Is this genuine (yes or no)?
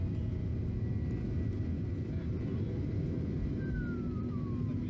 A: yes